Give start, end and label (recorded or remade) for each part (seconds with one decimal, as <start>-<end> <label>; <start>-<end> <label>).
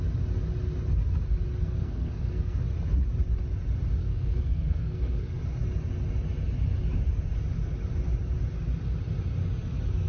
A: 0.0-1.6 recorded; 1.6-2.6 remade; 2.6-4.0 recorded; 4.0-5.4 remade; 5.4-10.1 recorded